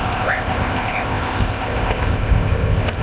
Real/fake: fake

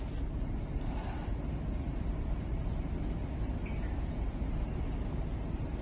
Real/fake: real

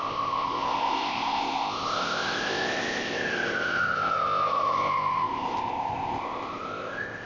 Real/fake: fake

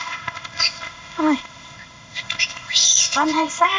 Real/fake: fake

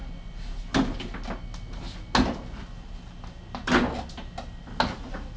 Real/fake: real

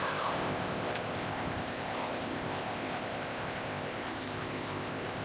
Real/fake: fake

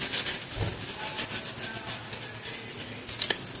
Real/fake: real